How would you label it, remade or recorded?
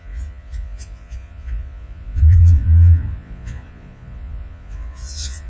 remade